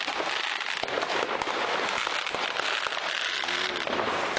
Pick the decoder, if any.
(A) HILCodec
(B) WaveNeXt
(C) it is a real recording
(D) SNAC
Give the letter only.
C